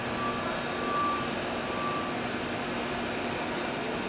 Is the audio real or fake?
real